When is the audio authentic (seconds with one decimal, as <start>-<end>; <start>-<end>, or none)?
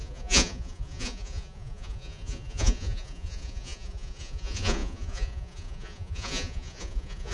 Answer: none